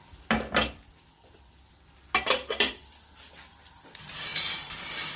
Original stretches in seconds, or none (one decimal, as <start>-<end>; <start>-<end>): 0.0-5.2